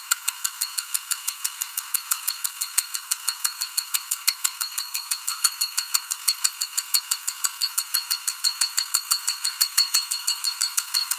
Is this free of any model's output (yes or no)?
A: no